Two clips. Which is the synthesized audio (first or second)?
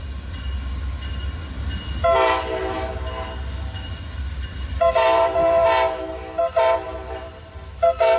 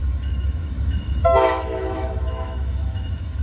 second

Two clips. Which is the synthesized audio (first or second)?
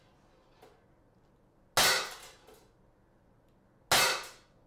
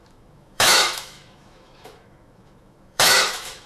second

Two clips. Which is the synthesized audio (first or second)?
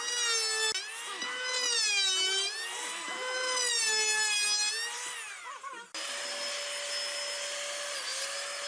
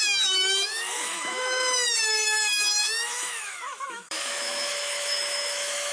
second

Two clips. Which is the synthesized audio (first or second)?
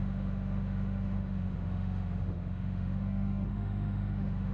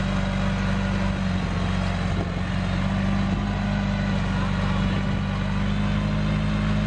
first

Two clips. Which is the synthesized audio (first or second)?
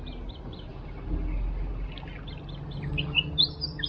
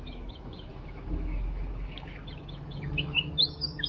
second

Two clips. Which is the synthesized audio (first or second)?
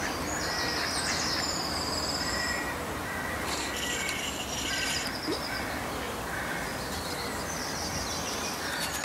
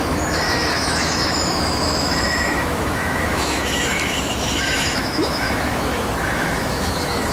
second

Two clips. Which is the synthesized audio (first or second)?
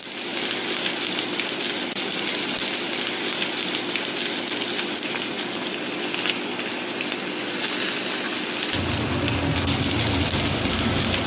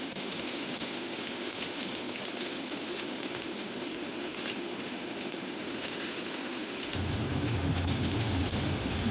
second